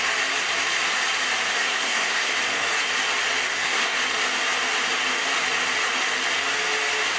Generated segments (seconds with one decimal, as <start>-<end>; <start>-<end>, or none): 1.5-2.3; 3.5-4.0